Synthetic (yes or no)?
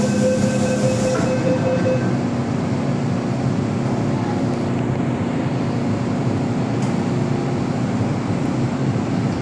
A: no